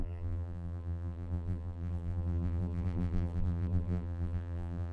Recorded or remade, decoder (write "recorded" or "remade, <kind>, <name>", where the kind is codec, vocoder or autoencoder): remade, vocoder, BigVGAN v2